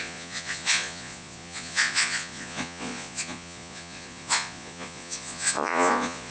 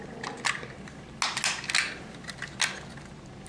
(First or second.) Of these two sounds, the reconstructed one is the first